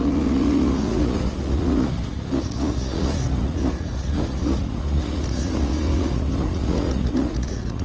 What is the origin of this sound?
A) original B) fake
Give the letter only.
B